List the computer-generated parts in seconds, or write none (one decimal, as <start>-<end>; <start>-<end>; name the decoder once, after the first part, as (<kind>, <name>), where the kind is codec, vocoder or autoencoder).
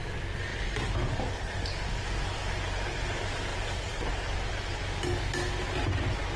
0.5-1.6 (vocoder, BigVGAN v2); 3.5-4.5